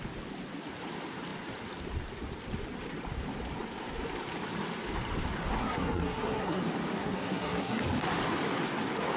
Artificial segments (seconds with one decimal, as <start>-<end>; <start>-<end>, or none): 5.6-6.6; 7.0-7.8